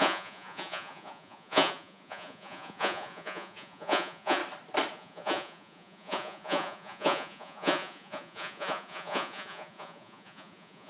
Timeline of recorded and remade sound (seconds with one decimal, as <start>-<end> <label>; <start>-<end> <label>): 0.0-4.4 remade; 4.4-4.9 recorded; 4.9-10.9 remade